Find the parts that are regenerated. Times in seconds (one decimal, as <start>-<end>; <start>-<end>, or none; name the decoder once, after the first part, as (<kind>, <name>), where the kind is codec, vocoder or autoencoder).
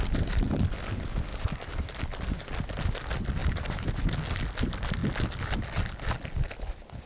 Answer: 1.3-2.0 (vocoder, BigVGAN v2); 3.4-4.1